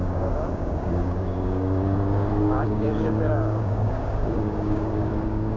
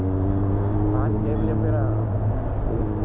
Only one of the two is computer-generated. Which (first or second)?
first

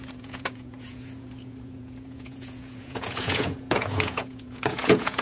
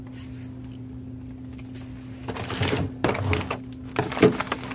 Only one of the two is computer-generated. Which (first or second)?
first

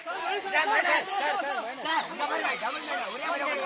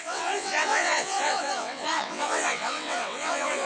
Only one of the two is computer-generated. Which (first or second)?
second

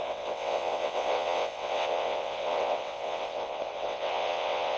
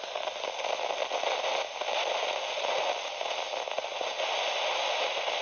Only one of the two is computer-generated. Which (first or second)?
first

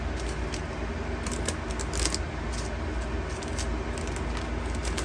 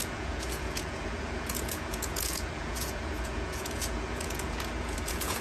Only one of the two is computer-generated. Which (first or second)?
second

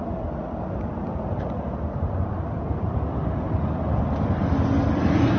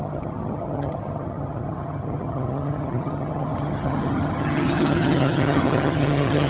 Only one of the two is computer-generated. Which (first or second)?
second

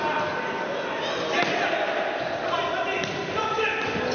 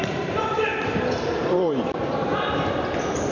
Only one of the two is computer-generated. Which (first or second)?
second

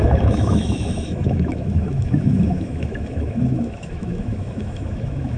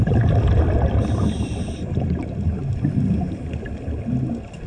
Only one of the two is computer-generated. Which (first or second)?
first